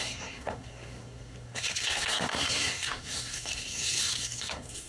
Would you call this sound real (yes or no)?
no